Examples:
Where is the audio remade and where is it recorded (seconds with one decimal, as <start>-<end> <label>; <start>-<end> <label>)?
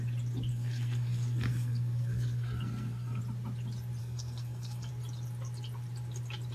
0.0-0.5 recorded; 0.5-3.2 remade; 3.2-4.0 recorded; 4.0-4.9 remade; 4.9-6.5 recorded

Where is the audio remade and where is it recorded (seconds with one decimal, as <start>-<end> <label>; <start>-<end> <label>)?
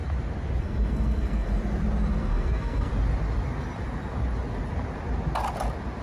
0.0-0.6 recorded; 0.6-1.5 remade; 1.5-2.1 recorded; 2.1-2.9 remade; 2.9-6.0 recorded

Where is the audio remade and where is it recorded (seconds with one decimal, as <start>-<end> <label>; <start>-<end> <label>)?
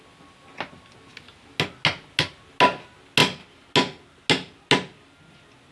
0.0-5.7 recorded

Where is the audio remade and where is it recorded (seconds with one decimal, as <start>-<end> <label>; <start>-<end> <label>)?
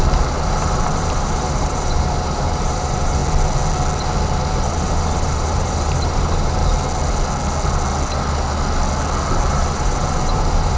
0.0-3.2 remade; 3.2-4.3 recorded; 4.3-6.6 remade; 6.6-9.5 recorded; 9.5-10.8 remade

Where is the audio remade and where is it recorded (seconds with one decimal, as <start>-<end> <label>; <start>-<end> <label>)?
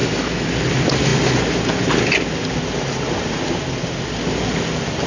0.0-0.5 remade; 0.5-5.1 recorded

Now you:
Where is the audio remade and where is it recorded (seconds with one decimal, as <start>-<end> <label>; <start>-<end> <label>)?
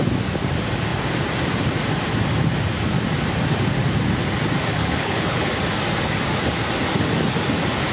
0.0-4.7 recorded; 4.7-5.5 remade; 5.5-7.9 recorded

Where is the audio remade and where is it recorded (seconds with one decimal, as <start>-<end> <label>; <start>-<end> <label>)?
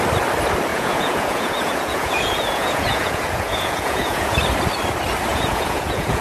0.0-0.7 recorded; 0.7-4.4 remade; 4.4-5.3 recorded; 5.3-6.2 remade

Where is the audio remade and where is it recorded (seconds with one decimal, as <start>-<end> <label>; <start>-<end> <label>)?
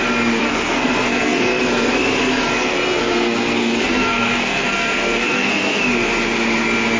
0.0-0.4 recorded; 0.4-1.6 remade; 1.6-2.6 recorded; 2.6-5.8 remade; 5.8-7.0 recorded